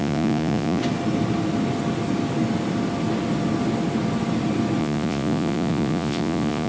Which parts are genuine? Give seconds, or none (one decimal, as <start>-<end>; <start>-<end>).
0.8-4.8